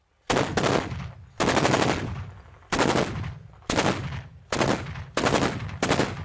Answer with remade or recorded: recorded